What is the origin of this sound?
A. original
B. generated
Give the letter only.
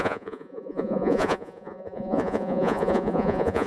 B